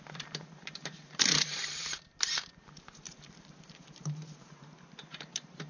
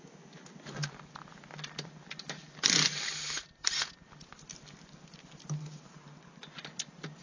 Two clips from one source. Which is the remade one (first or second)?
first